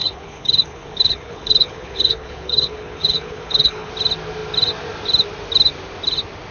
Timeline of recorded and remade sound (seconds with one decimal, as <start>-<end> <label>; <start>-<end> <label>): 0.0-3.9 remade; 3.9-6.5 recorded

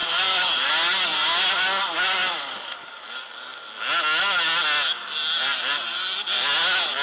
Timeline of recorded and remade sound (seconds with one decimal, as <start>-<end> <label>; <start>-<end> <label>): 0.0-0.7 remade; 0.7-5.5 recorded; 5.5-6.5 remade; 6.5-7.0 recorded

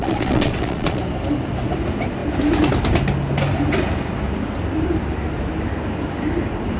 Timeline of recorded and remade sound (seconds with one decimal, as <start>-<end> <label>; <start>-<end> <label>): 0.0-1.0 remade; 1.0-6.8 recorded

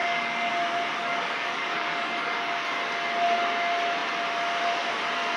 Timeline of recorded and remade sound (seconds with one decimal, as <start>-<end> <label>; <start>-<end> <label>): 0.0-0.5 remade; 0.5-1.0 recorded; 1.0-2.7 remade; 2.7-5.4 recorded

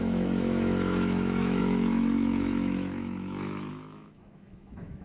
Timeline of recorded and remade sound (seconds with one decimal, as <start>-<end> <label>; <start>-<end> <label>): 0.0-5.0 remade